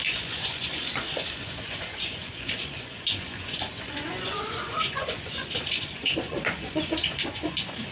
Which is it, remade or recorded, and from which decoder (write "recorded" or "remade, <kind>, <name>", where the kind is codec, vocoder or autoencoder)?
remade, vocoder, Vocos